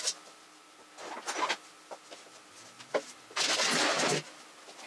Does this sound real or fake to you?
real